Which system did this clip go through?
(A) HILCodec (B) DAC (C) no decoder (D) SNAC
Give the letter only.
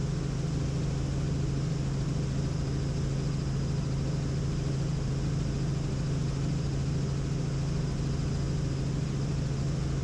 C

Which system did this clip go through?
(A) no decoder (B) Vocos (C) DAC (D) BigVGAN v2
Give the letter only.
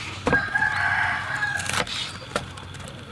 A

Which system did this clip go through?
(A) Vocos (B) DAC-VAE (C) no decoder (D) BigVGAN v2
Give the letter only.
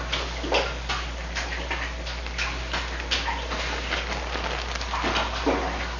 C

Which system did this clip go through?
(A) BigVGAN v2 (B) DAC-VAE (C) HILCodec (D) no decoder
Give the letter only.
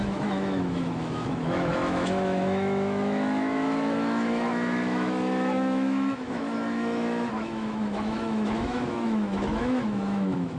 B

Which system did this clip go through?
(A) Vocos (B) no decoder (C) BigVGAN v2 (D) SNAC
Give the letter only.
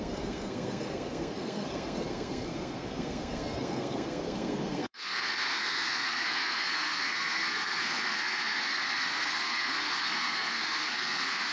D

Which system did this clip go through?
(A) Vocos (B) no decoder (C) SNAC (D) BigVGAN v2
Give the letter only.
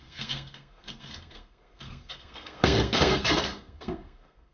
C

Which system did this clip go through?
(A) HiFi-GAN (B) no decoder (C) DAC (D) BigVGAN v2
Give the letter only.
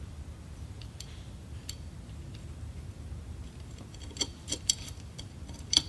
D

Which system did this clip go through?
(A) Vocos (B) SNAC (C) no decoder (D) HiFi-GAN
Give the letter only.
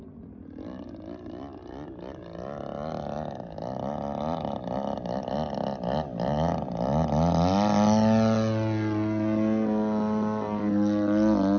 C